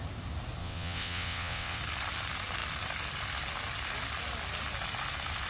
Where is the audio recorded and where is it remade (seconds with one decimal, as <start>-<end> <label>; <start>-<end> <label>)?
0.0-0.6 recorded; 0.6-1.8 remade; 1.8-5.5 recorded